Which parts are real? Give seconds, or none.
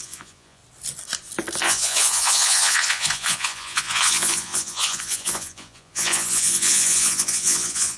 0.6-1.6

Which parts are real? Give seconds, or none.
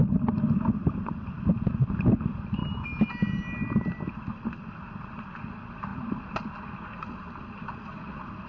0.0-8.5